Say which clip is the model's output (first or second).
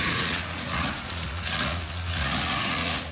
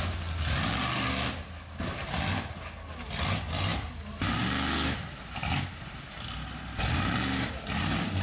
first